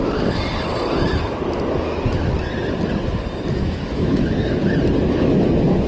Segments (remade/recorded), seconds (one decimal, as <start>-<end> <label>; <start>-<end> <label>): 0.0-3.5 recorded; 3.5-4.6 remade; 4.6-5.2 recorded; 5.2-5.9 remade